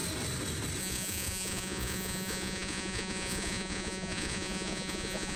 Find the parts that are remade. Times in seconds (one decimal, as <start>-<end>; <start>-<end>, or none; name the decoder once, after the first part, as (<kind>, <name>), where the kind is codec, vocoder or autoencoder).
0.8-5.4 (vocoder, Vocos)